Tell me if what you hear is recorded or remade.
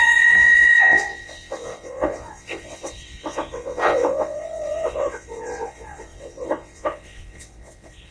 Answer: remade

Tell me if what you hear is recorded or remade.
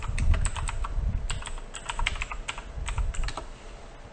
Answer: recorded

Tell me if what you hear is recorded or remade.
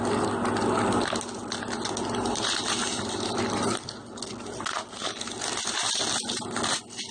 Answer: recorded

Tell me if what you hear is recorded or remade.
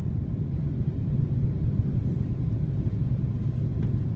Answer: recorded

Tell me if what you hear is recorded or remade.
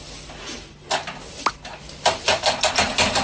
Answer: recorded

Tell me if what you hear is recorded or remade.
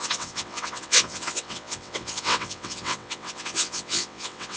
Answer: remade